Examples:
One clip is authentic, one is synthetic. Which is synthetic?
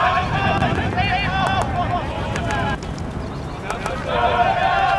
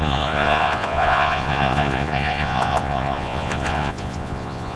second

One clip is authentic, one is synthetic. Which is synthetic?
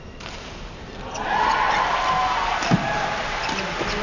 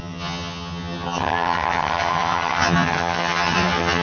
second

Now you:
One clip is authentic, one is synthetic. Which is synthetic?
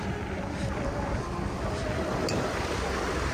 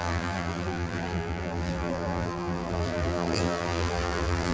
second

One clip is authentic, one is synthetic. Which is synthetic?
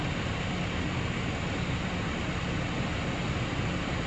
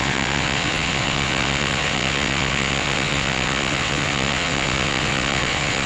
second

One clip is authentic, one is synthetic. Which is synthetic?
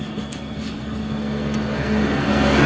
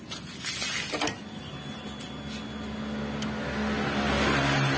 first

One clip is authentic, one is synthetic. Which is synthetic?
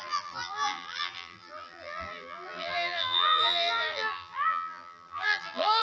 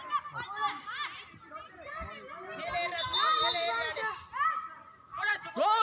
first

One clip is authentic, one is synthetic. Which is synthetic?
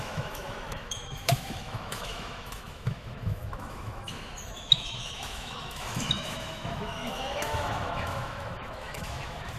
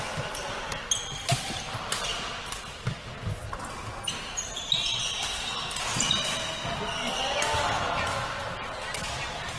first